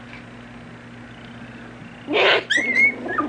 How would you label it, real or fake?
real